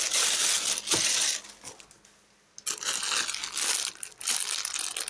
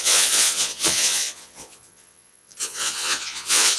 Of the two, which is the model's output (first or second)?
second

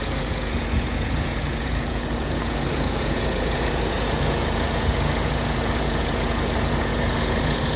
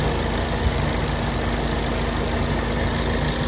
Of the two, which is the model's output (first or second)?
first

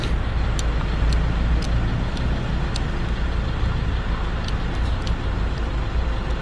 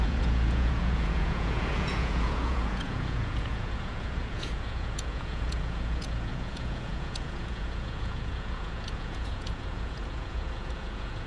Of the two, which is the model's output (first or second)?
second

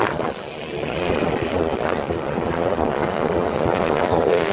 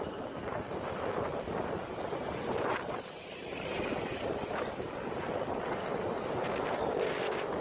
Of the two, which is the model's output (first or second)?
first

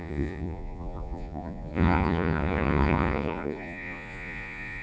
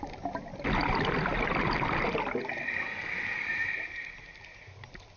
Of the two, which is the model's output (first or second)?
first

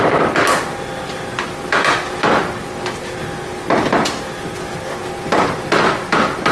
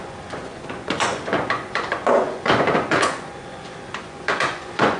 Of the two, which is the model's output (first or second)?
second